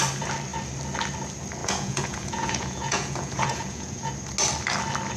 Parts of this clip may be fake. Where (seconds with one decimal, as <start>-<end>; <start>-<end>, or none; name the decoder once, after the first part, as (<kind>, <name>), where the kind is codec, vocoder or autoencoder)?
1.6-4.1 (vocoder, Vocos)